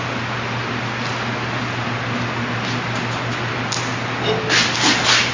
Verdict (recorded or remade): recorded